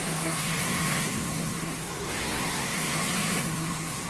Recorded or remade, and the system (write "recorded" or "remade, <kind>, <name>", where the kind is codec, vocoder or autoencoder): remade, codec, SNAC